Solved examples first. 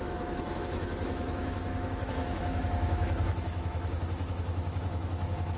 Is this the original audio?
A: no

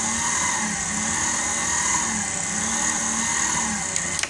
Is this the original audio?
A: yes